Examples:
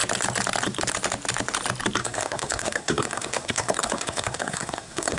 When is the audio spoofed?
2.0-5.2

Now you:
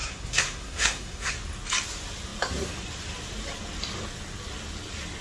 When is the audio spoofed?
0.0-1.3